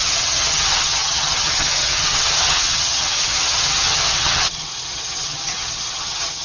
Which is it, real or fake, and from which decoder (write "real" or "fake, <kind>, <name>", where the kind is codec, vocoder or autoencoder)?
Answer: fake, vocoder, HiFi-GAN